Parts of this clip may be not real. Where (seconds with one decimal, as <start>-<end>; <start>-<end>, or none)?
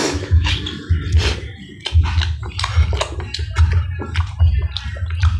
0.0-0.5